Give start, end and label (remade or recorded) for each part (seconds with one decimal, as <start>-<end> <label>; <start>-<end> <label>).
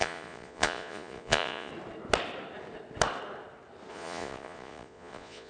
0.0-1.7 remade; 1.7-3.9 recorded; 3.9-5.5 remade